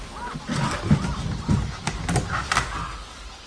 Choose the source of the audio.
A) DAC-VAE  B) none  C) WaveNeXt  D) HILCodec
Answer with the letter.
B